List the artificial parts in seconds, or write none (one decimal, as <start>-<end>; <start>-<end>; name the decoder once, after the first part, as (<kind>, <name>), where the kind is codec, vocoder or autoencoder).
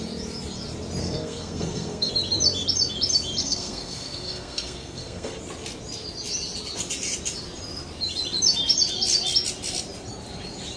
1.0-2.1 (codec, SNAC); 3.4-5.4